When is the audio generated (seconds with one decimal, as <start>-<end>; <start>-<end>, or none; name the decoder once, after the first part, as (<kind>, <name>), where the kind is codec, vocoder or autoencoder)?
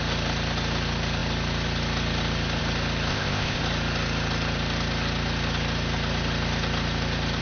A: 3.1-3.6 (codec, ZipCodec)